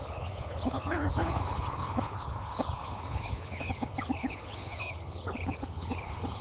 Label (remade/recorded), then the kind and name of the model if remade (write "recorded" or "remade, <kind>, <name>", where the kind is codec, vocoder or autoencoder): remade, codec, HILCodec